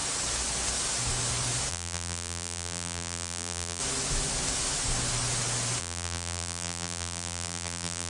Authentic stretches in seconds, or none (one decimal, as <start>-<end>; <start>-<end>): 0.0-1.7; 3.8-5.8